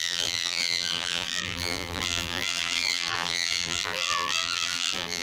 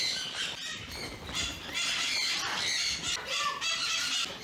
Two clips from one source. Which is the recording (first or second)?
second